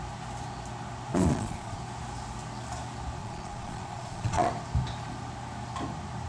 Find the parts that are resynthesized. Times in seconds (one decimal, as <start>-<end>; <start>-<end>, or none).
1.1-1.8; 3.2-4.5